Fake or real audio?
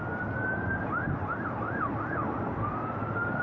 real